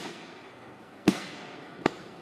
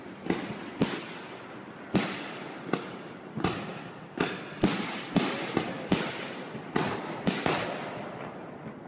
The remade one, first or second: first